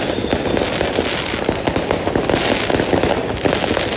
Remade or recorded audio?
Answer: recorded